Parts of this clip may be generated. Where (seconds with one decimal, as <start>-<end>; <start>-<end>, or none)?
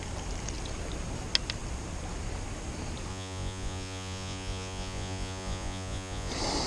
3.1-6.3